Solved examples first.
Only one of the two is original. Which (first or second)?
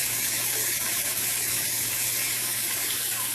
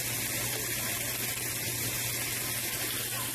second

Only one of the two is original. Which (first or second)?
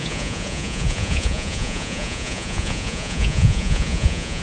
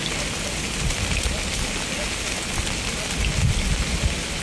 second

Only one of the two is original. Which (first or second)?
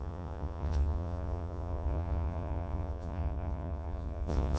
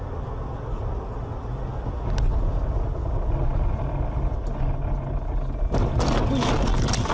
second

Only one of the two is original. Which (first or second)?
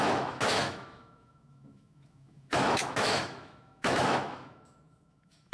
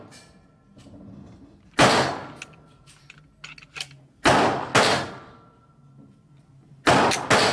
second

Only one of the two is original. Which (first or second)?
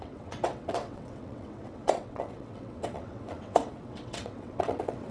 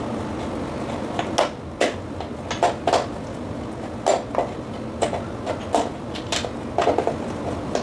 second